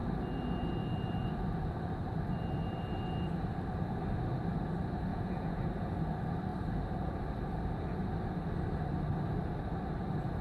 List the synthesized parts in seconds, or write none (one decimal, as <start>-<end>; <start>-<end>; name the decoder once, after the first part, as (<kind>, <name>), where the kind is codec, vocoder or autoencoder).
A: 5.1-5.6 (vocoder, Vocos)